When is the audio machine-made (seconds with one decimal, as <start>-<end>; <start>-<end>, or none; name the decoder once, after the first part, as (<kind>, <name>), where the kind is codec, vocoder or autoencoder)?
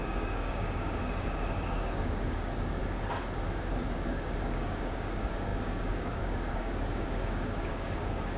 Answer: 0.0-2.8 (codec, DAC); 3.6-8.4